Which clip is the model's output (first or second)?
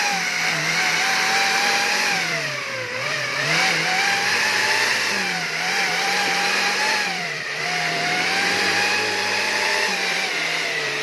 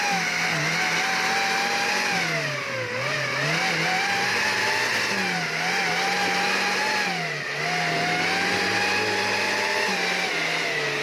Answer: first